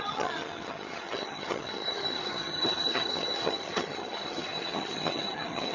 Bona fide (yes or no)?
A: no